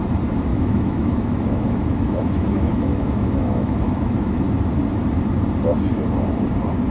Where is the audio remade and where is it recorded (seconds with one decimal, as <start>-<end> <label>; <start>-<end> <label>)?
0.0-0.5 recorded; 0.5-4.4 remade; 4.4-6.9 recorded